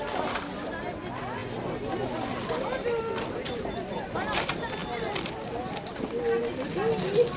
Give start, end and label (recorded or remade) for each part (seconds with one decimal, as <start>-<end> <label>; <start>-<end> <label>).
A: 0.0-7.4 recorded

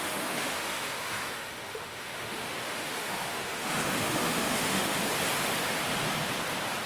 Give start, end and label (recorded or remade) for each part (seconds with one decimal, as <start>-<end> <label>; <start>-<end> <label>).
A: 0.0-5.0 remade; 5.0-6.9 recorded

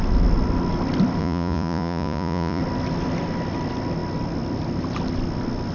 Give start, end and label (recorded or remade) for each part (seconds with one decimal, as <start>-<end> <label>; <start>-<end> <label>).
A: 0.0-1.2 recorded; 1.2-2.6 remade; 2.6-5.7 recorded

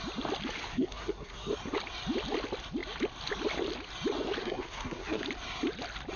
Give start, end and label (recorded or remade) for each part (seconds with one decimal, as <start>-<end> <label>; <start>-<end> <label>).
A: 0.0-0.7 recorded; 0.7-1.5 remade; 1.5-4.4 recorded; 4.4-5.2 remade; 5.2-6.2 recorded

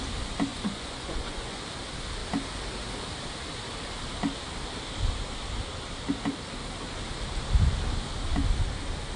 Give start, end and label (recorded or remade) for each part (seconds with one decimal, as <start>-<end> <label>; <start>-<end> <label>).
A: 0.0-0.5 recorded; 0.5-1.6 remade; 1.6-9.2 recorded

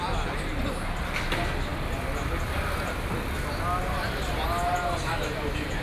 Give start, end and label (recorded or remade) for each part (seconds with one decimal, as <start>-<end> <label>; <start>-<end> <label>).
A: 0.0-5.8 recorded